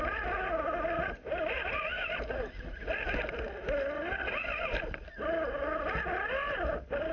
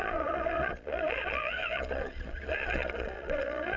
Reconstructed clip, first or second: second